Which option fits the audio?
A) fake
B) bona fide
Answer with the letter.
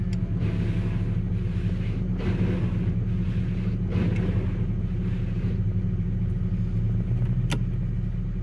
B